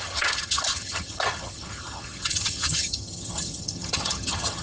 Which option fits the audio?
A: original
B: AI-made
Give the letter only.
B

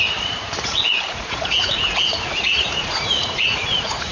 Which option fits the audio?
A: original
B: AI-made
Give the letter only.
B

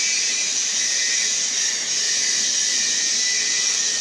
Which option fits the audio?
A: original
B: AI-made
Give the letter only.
A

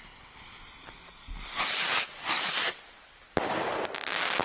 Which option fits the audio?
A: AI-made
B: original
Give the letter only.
B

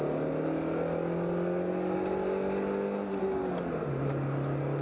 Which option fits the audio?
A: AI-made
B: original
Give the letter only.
B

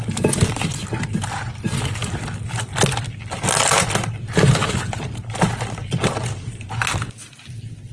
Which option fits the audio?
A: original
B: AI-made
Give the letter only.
B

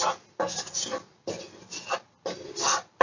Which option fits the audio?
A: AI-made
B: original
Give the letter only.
B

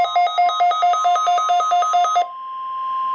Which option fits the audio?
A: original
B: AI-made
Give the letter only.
A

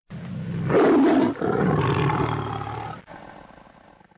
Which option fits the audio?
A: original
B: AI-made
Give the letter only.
A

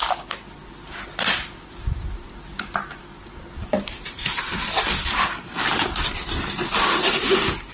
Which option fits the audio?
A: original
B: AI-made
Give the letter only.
A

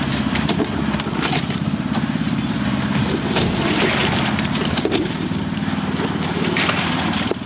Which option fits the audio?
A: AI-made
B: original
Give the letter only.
A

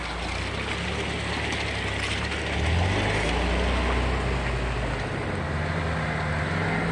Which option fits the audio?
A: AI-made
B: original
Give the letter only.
B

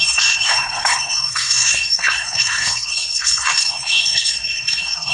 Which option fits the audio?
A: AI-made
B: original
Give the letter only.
A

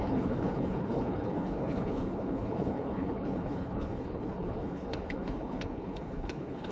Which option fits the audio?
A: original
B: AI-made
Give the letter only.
B